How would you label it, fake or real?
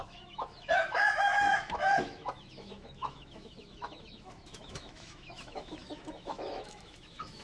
fake